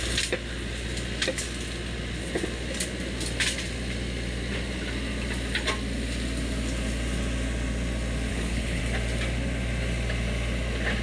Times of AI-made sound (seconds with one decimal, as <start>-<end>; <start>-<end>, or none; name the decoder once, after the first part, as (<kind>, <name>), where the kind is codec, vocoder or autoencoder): 8.3-8.8 (codec, HILCodec)